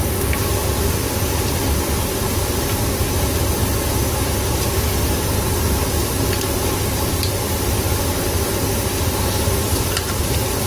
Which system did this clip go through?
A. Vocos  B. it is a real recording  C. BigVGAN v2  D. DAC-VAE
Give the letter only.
B